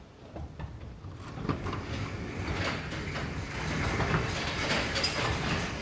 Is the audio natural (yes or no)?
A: yes